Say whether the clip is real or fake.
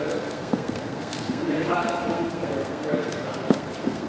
fake